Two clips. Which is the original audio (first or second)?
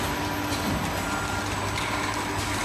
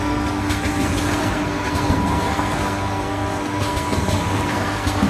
first